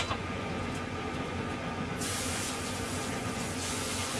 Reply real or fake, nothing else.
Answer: fake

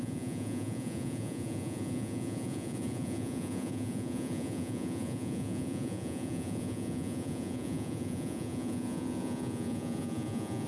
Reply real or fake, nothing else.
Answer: fake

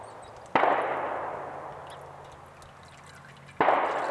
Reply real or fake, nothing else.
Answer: real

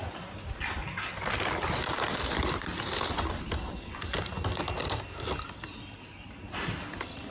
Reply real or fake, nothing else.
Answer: real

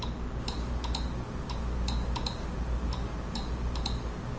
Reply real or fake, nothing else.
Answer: real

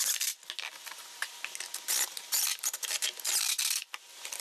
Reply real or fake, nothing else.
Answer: real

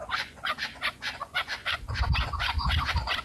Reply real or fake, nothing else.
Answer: fake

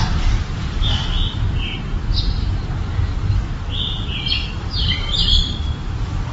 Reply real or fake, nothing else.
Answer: real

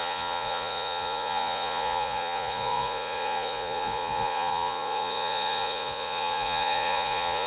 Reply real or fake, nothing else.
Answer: fake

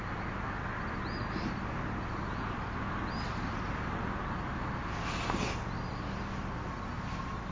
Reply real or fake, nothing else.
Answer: real